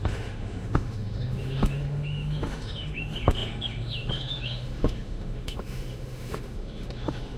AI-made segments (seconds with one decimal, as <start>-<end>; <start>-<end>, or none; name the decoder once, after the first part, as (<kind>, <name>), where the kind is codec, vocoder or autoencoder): 0.0-7.4 (autoencoder, DAC-VAE)